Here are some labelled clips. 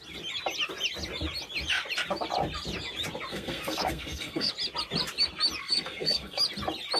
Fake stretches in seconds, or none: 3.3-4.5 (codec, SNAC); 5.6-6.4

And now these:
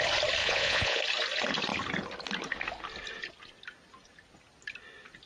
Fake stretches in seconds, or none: 0.4-1.0 (vocoder, Vocos)

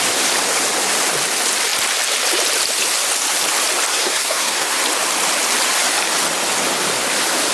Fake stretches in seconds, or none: 3.9-4.8 (codec, SNAC)

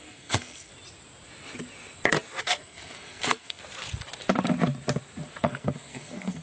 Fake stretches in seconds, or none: 0.0-0.7 (codec, SNAC); 2.4-3.6; 5.4-6.4

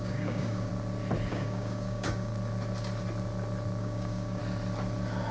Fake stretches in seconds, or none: 0.0-0.7 (codec, DAC); 1.3-2.3; 3.8-4.4

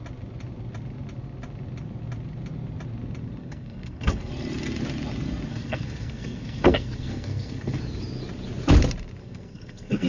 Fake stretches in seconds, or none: 3.4-4.3 (codec, SNAC); 5.5-7.8; 9.2-10.1

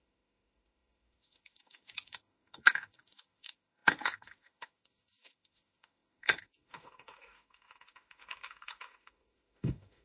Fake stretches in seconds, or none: 0.0-10.0 (autoencoder, DAC-VAE)